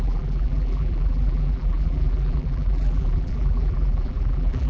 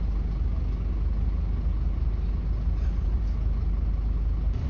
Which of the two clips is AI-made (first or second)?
first